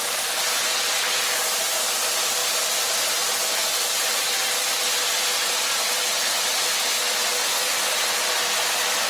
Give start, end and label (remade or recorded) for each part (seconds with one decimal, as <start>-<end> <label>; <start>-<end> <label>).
0.0-9.1 recorded